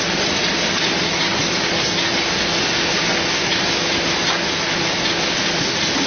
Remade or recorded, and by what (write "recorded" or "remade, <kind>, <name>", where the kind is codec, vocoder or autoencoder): recorded